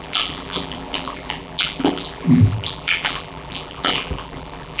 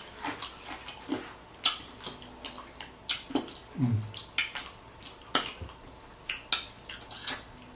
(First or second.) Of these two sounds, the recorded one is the second